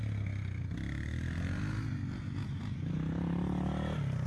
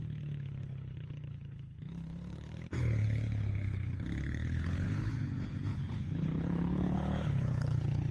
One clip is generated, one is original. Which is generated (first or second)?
second